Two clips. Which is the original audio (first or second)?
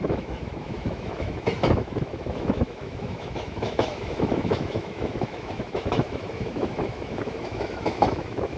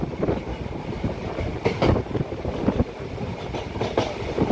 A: second